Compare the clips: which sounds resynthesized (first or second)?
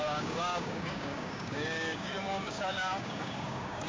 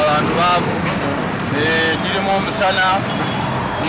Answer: first